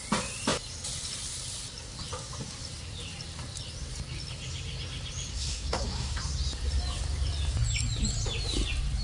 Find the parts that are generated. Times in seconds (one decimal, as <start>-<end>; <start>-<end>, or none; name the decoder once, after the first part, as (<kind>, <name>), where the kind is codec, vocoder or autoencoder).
5.3-6.2 (codec, SNAC)